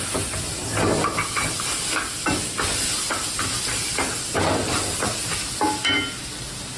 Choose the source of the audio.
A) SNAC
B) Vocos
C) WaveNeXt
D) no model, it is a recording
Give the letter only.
D